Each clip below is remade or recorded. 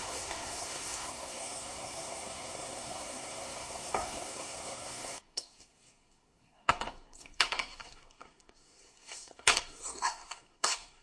remade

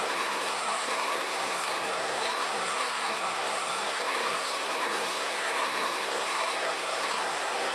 remade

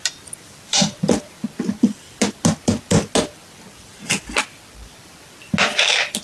recorded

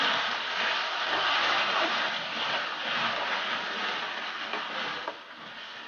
recorded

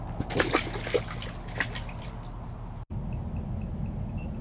recorded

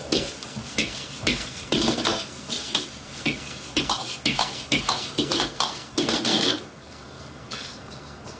remade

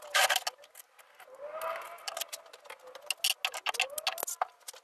recorded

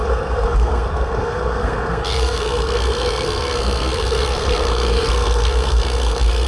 remade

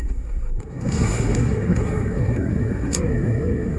remade